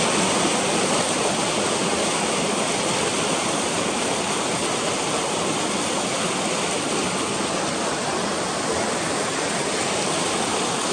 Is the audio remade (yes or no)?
no